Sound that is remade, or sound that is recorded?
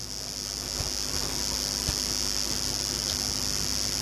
recorded